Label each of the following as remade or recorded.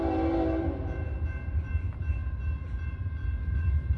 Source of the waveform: remade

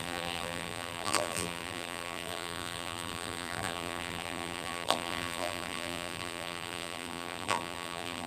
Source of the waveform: remade